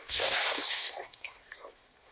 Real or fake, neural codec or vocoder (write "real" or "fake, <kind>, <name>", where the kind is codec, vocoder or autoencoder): fake, codec, SNAC